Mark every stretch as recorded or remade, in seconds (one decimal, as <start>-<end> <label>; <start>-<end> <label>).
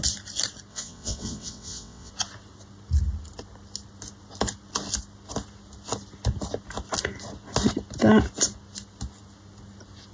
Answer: 0.0-0.7 recorded; 0.7-2.1 remade; 2.1-10.1 recorded